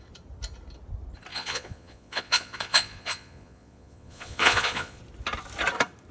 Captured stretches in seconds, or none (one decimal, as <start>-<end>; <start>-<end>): 0.0-1.3; 5.0-6.1